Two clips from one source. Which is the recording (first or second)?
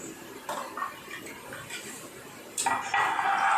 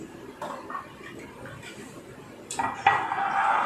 second